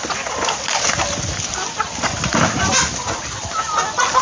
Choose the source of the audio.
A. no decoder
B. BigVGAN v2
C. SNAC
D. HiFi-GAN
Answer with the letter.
A